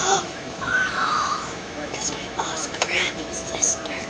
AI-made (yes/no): yes